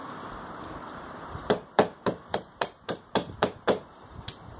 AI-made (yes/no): yes